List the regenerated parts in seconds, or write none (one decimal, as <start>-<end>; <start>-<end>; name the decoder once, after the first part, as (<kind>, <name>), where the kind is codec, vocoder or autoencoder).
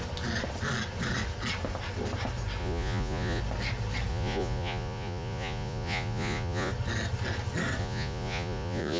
2.6-3.4 (vocoder, Vocos); 4.1-6.7; 7.8-9.0